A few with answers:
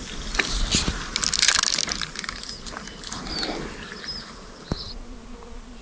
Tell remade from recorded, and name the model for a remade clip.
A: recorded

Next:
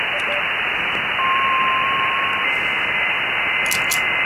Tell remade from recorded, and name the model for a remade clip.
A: recorded